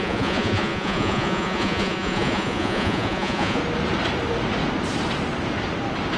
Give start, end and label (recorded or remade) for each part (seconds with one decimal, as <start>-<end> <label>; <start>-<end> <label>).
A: 0.0-3.6 remade; 3.6-6.2 recorded